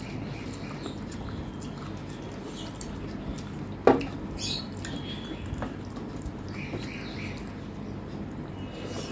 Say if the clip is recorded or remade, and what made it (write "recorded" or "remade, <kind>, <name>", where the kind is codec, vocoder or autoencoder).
recorded